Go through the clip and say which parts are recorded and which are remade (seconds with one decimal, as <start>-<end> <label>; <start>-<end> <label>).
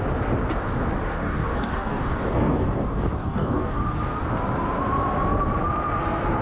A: 0.0-1.1 recorded; 1.1-3.8 remade; 3.8-6.4 recorded